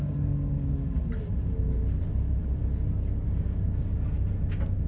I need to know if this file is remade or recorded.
recorded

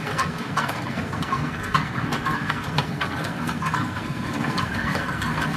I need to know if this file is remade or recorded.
remade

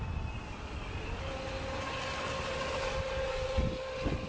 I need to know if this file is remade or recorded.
recorded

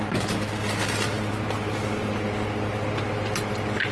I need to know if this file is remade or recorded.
recorded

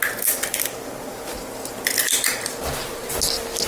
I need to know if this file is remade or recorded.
recorded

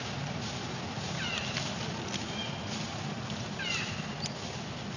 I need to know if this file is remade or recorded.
recorded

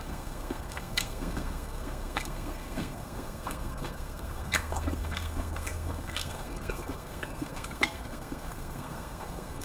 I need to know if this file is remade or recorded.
remade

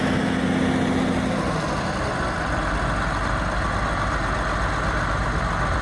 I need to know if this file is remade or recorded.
recorded